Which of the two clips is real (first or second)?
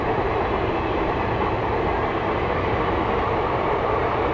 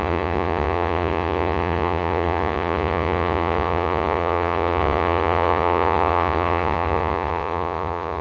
first